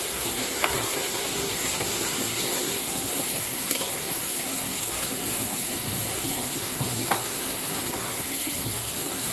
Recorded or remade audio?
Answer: remade